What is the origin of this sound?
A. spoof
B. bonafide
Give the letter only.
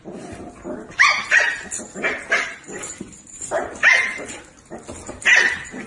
B